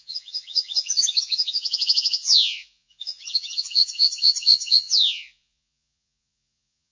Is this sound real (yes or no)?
no